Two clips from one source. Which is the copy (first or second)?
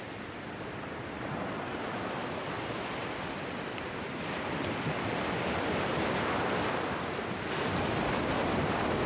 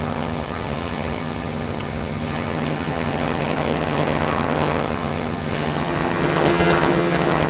second